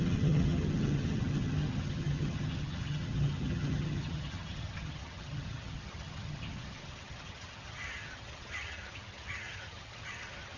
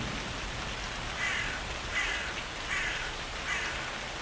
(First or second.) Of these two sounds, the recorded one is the second